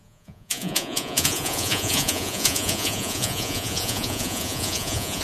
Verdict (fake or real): fake